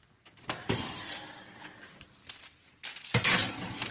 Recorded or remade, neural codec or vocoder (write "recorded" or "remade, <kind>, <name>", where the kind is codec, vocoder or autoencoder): recorded